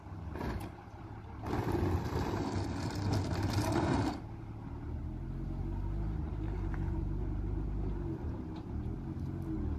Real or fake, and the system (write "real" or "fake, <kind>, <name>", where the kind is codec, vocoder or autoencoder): real